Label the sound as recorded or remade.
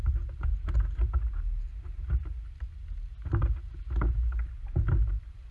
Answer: recorded